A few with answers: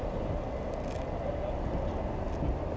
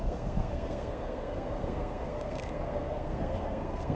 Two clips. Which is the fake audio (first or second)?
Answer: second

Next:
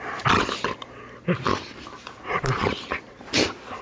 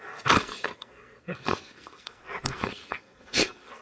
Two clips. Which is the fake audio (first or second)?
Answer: second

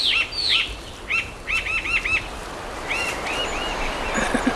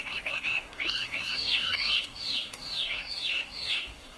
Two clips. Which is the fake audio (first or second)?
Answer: second